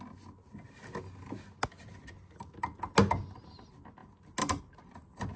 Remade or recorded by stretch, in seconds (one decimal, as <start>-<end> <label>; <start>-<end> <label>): 0.0-5.4 recorded